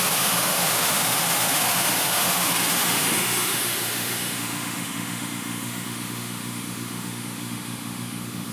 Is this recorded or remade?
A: remade